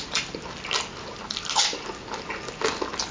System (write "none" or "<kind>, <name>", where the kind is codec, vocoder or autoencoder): none